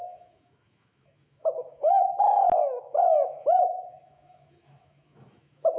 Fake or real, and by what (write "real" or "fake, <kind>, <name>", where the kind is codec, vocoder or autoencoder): fake, autoencoder, DAC-VAE